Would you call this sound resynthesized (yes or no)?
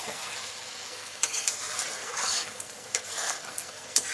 yes